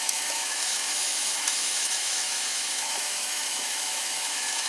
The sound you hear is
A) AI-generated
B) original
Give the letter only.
A